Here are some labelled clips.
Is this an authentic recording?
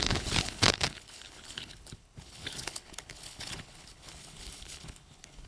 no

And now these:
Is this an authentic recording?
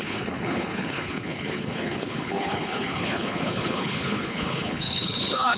no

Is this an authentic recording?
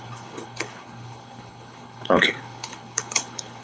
no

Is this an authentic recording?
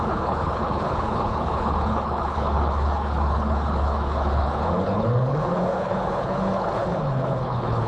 no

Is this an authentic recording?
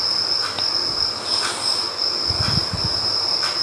yes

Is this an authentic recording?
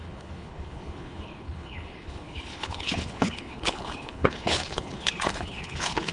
no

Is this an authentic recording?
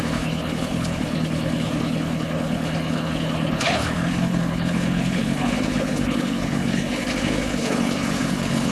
no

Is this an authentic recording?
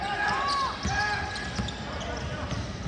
yes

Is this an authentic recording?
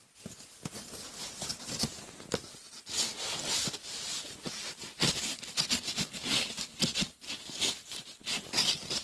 yes